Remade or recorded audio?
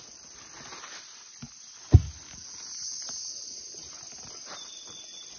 recorded